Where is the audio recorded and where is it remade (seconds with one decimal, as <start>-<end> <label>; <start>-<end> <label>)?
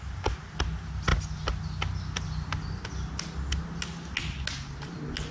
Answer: 0.0-5.3 recorded